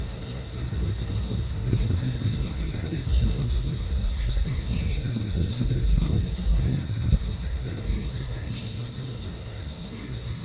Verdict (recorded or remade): remade